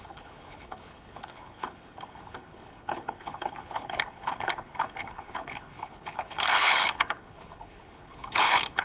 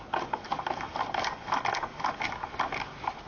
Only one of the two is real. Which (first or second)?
second